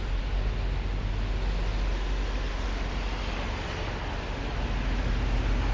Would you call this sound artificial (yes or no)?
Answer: no